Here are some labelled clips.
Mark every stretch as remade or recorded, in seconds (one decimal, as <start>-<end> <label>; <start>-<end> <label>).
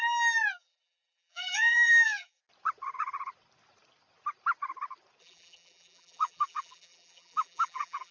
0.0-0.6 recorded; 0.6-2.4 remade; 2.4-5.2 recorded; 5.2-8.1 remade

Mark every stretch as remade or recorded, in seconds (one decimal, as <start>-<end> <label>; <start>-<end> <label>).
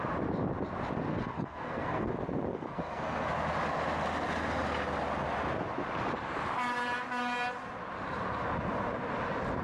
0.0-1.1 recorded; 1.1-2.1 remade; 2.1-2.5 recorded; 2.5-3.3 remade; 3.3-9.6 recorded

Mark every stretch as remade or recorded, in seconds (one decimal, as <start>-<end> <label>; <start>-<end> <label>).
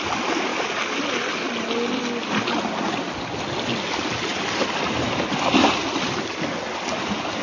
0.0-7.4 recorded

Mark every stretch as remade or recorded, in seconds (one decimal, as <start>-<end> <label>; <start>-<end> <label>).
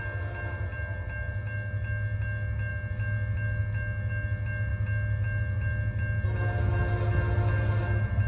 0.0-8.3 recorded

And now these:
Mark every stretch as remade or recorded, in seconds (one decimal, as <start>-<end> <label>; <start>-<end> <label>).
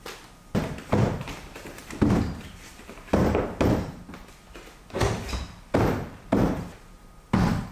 0.0-1.8 recorded; 1.8-3.2 remade; 3.2-7.7 recorded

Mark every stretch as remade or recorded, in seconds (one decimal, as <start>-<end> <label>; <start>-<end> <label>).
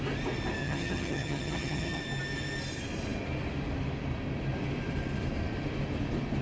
0.0-0.6 recorded; 0.6-2.0 remade; 2.0-6.4 recorded